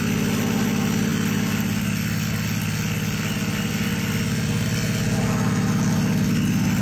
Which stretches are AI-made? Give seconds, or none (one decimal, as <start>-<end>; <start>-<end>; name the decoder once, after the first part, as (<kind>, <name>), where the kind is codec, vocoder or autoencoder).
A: none